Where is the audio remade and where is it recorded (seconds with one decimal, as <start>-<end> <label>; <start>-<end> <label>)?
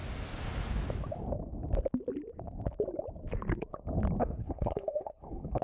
0.0-4.2 recorded; 4.2-5.6 remade